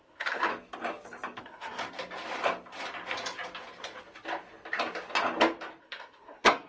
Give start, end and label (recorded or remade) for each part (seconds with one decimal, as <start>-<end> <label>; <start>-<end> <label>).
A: 0.0-0.5 remade; 0.5-1.4 recorded; 1.4-1.8 remade; 1.8-5.8 recorded; 5.8-6.7 remade

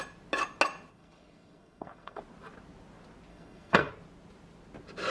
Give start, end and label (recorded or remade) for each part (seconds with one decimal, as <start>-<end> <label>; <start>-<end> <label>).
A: 0.0-0.9 recorded; 0.9-2.2 remade; 2.2-3.3 recorded; 3.3-3.9 remade; 3.9-5.1 recorded

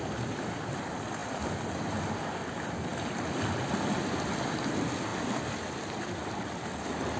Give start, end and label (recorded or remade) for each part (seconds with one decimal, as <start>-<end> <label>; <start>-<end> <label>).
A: 0.0-7.2 recorded